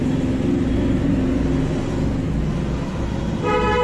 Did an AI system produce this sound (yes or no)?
no